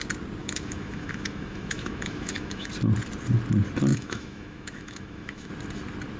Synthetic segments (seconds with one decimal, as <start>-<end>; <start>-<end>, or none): 0.4-2.7; 3.9-5.5